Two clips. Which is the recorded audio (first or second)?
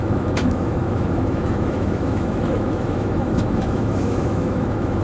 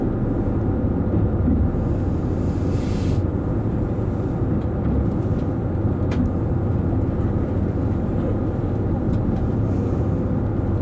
second